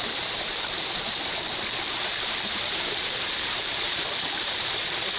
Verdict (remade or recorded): remade